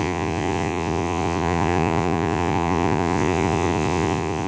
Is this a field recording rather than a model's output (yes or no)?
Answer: no